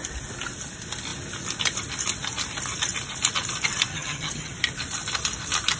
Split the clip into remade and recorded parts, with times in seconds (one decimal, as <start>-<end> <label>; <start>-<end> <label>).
0.0-3.9 recorded; 3.9-4.5 remade; 4.5-5.8 recorded

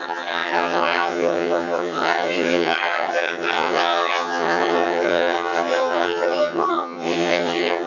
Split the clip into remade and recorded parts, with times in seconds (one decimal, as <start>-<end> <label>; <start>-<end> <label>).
0.0-7.9 remade